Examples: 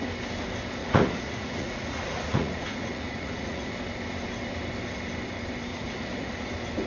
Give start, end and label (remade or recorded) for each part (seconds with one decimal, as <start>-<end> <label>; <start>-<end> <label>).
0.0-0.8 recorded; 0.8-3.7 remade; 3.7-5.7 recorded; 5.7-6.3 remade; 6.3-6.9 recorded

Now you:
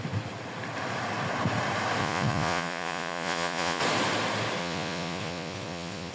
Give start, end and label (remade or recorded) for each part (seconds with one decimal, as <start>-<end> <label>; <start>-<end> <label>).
0.0-2.0 recorded; 2.0-3.8 remade; 3.8-4.6 recorded; 4.6-6.1 remade

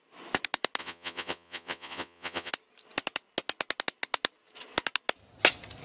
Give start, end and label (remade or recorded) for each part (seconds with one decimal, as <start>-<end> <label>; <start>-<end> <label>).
0.0-0.8 recorded; 0.8-2.5 remade; 2.5-5.8 recorded

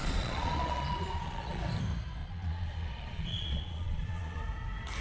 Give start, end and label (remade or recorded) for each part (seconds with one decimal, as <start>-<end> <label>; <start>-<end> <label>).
0.0-1.6 remade; 1.6-2.2 recorded; 2.2-4.4 remade; 4.4-5.0 recorded

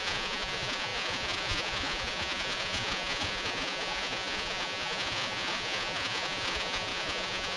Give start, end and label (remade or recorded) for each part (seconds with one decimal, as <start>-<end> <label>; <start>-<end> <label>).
0.0-7.6 remade

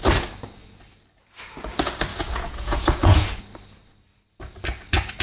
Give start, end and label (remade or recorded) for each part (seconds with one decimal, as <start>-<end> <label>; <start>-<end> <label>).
0.0-2.1 recorded; 2.1-3.4 remade; 3.4-5.2 recorded

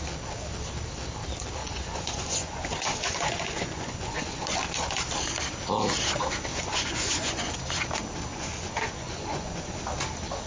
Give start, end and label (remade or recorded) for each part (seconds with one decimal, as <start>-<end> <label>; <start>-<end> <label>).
0.0-1.6 recorded; 1.6-4.4 remade; 4.4-6.5 recorded; 6.5-7.5 remade; 7.5-8.3 recorded; 8.3-9.8 remade; 9.8-10.5 recorded